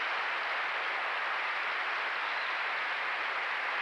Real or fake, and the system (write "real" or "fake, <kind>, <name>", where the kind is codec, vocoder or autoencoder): real